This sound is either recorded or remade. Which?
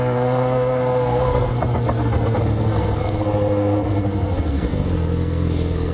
remade